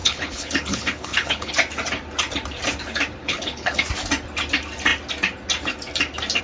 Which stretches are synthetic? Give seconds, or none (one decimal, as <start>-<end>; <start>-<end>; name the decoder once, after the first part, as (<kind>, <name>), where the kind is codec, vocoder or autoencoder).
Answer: 0.0-1.5 (codec, HILCodec); 3.2-3.8